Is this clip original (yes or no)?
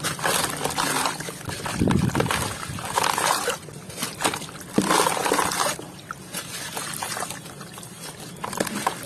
yes